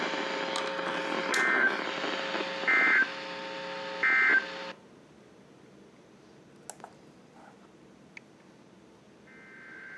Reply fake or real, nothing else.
real